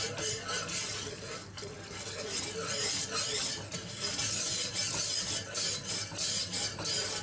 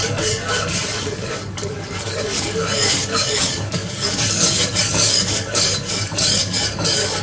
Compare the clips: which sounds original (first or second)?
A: first